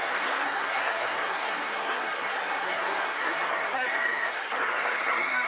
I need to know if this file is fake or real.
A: fake